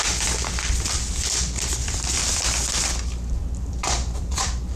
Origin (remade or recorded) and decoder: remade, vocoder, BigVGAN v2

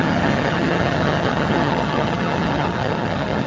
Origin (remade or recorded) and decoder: remade, vocoder, HiFi-GAN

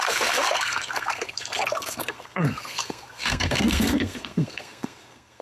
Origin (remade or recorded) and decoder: remade, codec, SNAC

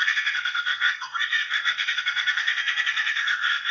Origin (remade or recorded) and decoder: remade, codec, SNAC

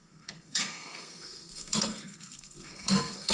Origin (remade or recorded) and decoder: remade, codec, SNAC